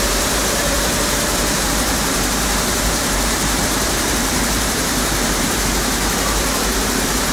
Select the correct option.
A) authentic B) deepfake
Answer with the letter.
B